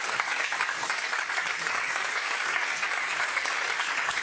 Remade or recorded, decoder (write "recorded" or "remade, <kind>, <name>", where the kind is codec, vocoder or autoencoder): remade, codec, DAC